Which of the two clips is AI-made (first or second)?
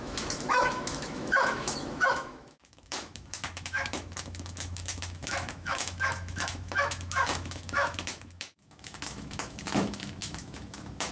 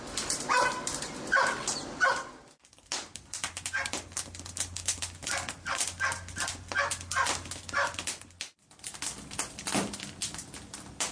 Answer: first